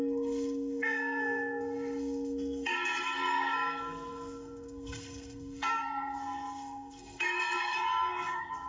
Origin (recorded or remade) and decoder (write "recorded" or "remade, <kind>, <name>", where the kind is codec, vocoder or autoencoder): remade, codec, SNAC